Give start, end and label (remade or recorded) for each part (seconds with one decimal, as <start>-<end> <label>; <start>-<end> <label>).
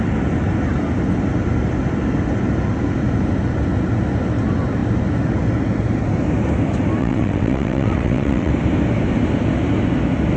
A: 0.0-7.0 recorded; 7.0-8.5 remade; 8.5-10.4 recorded